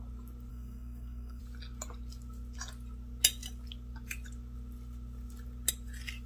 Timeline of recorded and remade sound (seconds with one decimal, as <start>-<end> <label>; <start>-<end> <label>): 0.0-0.5 recorded; 0.5-1.4 remade; 1.4-6.3 recorded